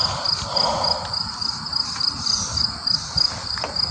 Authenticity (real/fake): real